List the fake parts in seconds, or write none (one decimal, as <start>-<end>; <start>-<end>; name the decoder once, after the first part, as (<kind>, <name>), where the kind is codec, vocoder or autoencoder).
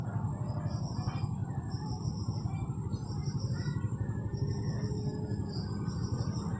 1.4-2.1 (vocoder, BigVGAN v2)